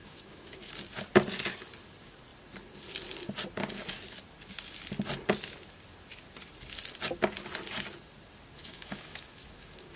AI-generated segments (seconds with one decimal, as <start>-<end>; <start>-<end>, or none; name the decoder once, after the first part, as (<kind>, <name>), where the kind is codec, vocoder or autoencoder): 0.0-0.7 (autoencoder, DAC-VAE); 8.6-10.0